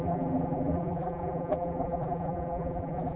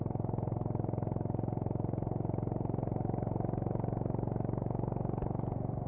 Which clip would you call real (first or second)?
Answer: second